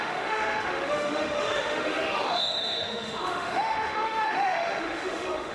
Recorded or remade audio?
remade